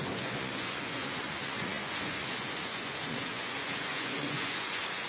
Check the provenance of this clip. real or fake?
fake